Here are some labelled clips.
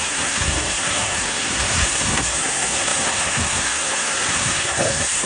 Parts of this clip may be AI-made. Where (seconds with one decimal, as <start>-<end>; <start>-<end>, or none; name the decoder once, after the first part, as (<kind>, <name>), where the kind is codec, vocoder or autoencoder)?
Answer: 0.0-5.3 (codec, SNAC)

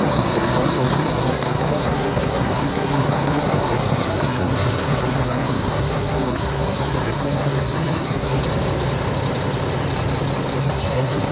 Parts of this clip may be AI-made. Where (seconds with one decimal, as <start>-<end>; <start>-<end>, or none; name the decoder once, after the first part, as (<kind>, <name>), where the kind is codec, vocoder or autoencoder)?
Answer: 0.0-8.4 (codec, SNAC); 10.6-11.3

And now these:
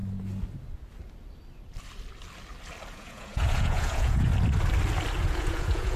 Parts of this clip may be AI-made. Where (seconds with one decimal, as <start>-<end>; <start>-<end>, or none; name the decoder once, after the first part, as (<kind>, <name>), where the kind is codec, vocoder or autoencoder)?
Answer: 2.9-4.3 (vocoder, Vocos); 5.2-6.0

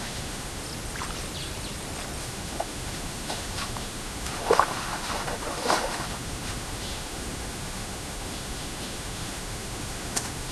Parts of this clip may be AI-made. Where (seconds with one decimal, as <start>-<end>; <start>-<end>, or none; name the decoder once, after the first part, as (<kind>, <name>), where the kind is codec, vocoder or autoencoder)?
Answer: 0.0-0.6 (autoencoder, DAC-VAE); 2.2-10.5